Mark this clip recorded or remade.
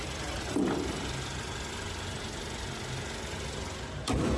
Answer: recorded